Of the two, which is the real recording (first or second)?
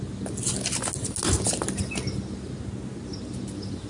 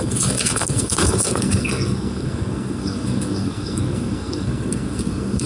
first